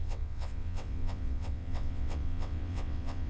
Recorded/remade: remade